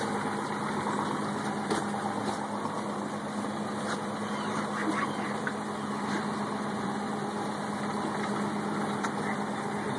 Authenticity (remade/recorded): recorded